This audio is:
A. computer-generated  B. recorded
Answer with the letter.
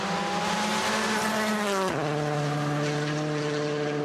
B